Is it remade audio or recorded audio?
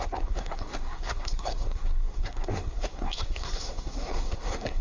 remade